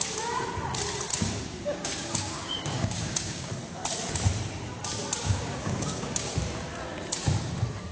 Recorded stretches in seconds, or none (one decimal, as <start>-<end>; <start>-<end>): 0.0-1.1; 3.5-5.2; 6.3-7.9